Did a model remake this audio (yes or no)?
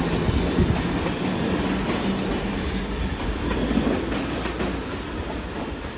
no